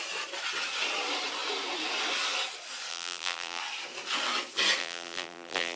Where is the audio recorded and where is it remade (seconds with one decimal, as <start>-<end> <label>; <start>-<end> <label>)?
0.0-2.9 recorded; 2.9-3.6 remade; 3.6-4.8 recorded; 4.8-5.8 remade